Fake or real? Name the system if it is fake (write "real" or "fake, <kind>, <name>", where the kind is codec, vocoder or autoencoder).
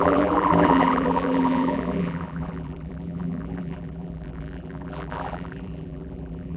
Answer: fake, vocoder, BigVGAN v2